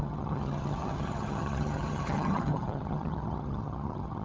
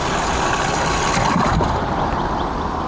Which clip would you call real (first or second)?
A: second